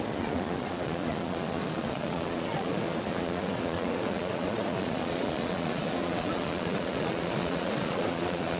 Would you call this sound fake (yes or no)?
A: yes